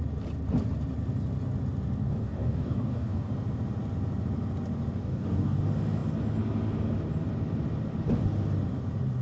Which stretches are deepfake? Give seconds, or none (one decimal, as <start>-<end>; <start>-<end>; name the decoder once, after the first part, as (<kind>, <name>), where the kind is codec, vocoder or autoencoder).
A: 2.0-3.3 (codec, DAC); 5.0-5.6